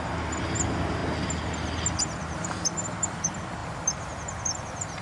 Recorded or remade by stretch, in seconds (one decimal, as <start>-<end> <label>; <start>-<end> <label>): 0.0-1.0 remade; 1.0-1.9 recorded; 1.9-5.0 remade

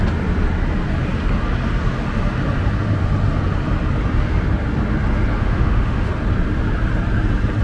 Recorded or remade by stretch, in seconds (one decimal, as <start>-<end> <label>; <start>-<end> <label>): 0.0-5.4 recorded; 5.4-6.1 remade; 6.1-7.6 recorded

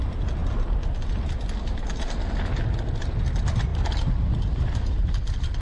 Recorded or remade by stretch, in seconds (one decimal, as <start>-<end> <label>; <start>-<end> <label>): 0.0-5.6 recorded

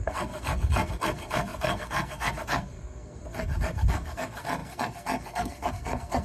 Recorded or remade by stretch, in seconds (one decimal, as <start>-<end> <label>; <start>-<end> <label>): 0.0-6.2 remade

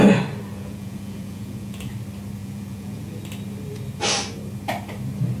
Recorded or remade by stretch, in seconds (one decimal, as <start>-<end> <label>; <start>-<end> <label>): 0.0-0.5 recorded; 0.5-1.9 remade; 1.9-2.4 recorded; 2.4-3.2 remade; 3.2-5.4 recorded

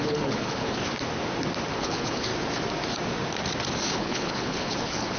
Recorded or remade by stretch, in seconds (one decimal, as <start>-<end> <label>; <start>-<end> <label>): 0.0-0.8 remade; 0.8-1.7 recorded; 1.7-2.3 remade; 2.3-3.9 recorded; 3.9-5.2 remade

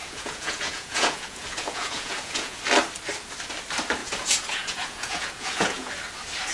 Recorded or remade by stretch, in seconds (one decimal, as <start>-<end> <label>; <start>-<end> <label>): 0.0-2.6 remade; 2.6-4.0 recorded; 4.0-5.9 remade; 5.9-6.5 recorded

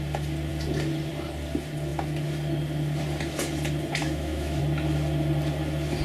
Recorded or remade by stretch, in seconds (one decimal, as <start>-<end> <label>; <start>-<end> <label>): 0.0-4.0 recorded; 4.0-4.6 remade; 4.6-6.0 recorded